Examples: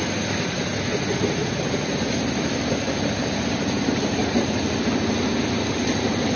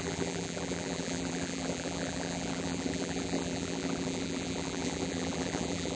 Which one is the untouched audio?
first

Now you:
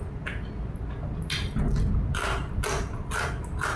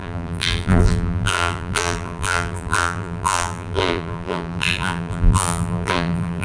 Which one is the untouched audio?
first